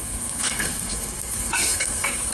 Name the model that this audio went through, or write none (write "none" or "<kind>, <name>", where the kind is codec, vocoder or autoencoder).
codec, SNAC